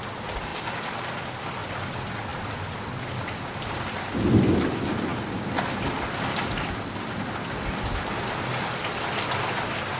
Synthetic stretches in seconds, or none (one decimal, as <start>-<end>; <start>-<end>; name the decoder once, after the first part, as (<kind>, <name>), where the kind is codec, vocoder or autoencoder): none